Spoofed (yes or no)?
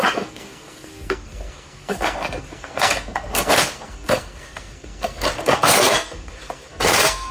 yes